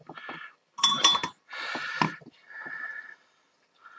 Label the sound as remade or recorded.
recorded